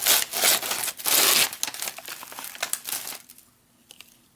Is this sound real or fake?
real